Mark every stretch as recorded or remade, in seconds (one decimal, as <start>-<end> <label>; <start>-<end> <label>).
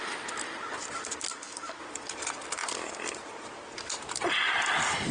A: 0.0-1.3 recorded; 1.3-1.8 remade; 1.8-5.1 recorded